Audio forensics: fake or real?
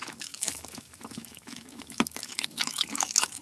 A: fake